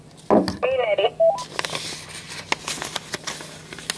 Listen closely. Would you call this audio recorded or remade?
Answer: recorded